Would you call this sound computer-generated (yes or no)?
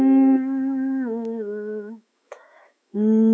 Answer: yes